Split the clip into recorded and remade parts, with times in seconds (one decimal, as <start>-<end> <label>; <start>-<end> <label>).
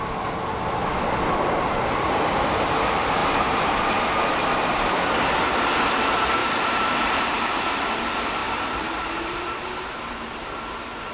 0.0-3.2 recorded; 3.2-3.9 remade; 3.9-6.4 recorded; 6.4-8.0 remade; 8.0-8.4 recorded; 8.4-10.3 remade; 10.3-11.1 recorded